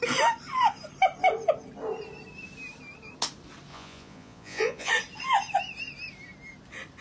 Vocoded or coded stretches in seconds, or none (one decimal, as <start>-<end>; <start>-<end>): 3.7-4.9